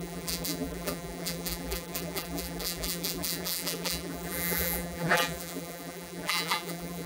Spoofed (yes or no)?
yes